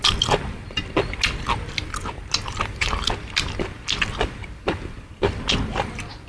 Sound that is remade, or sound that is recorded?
recorded